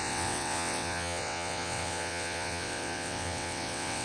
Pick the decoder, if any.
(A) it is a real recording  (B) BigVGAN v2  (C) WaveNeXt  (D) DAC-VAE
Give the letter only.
C